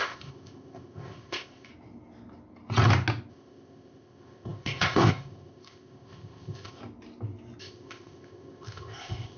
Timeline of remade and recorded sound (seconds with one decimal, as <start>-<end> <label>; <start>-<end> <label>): 0.0-1.7 remade; 1.7-3.3 recorded; 3.3-6.8 remade; 6.8-7.6 recorded; 7.6-9.4 remade